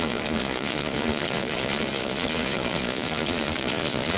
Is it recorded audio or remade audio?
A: remade